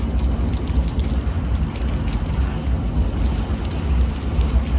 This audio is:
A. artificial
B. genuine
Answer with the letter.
B